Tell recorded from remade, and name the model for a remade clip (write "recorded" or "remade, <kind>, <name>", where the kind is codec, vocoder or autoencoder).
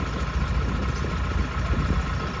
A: recorded